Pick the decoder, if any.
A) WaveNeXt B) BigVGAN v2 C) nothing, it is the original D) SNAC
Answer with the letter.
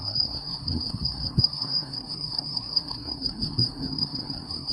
D